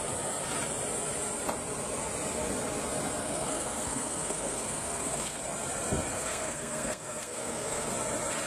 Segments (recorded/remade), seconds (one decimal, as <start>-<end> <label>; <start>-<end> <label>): 0.0-3.2 recorded; 3.2-5.4 remade; 5.4-6.1 recorded; 6.1-7.9 remade; 7.9-8.5 recorded